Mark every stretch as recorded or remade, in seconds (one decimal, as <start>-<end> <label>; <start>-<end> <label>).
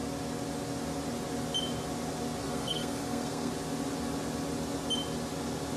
0.0-2.4 recorded; 2.4-3.5 remade; 3.5-5.8 recorded